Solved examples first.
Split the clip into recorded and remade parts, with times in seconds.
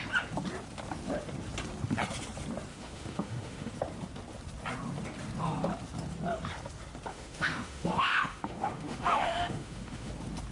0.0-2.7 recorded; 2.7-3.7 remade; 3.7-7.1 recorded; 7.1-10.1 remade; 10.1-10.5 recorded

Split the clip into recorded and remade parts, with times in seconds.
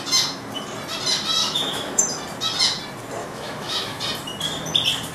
0.0-1.4 recorded; 1.4-2.0 remade; 2.0-3.2 recorded; 3.2-4.0 remade; 4.0-5.1 recorded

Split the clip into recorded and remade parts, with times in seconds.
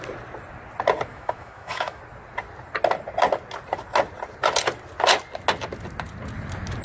0.0-1.1 recorded; 1.1-2.0 remade; 2.0-6.8 recorded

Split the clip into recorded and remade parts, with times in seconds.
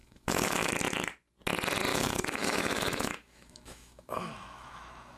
0.0-0.7 remade; 0.7-1.9 recorded; 1.9-5.2 remade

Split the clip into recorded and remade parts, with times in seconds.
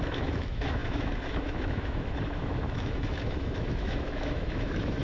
0.0-5.0 remade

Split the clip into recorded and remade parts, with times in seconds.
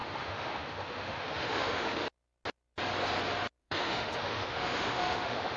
0.0-2.0 remade; 2.0-3.6 recorded; 3.6-5.6 remade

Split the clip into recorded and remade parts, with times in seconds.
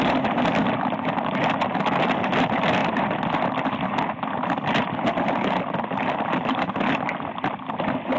0.0-8.2 recorded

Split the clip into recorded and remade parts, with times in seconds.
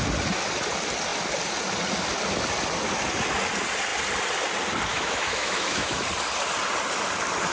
0.0-4.9 recorded; 4.9-6.0 remade; 6.0-7.5 recorded